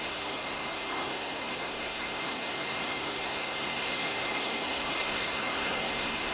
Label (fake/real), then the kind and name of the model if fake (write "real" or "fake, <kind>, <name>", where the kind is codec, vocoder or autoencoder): fake, codec, SNAC